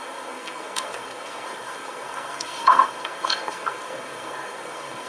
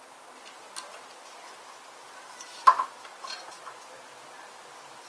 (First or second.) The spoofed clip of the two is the first